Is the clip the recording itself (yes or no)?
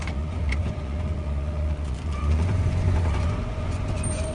no